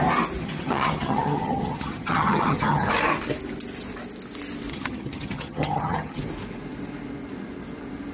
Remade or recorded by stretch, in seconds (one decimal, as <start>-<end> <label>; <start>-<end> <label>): 0.0-0.4 recorded; 0.4-2.8 remade; 2.8-4.7 recorded; 4.7-6.2 remade; 6.2-8.1 recorded